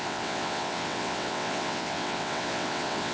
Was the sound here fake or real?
fake